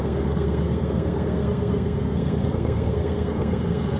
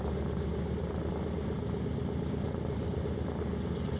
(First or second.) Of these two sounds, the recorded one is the second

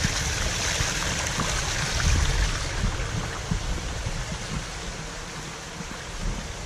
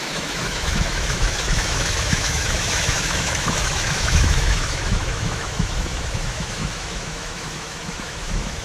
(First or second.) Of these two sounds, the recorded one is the first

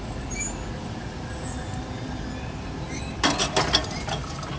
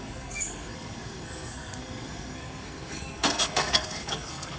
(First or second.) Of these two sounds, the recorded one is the first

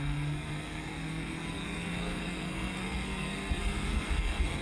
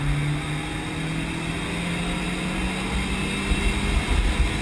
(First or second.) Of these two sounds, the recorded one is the second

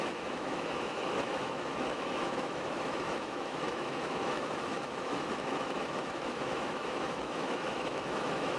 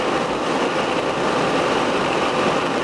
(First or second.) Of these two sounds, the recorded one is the second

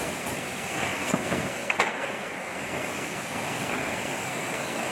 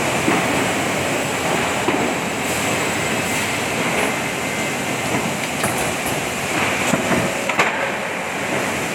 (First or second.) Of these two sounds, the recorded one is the second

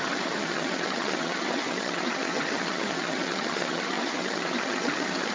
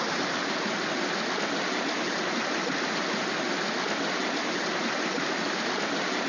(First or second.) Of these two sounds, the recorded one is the second